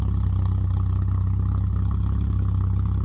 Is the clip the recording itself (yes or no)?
yes